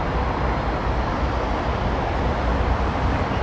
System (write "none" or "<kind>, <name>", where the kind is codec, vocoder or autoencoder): none